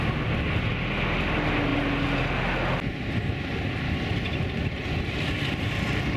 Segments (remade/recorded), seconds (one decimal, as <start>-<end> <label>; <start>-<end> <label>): 0.0-6.2 recorded